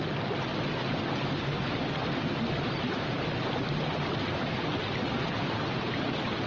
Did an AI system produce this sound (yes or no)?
no